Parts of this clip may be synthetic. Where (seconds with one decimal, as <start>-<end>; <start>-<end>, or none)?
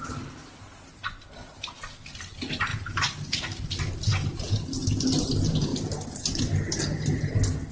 none